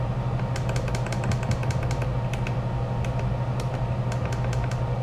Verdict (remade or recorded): recorded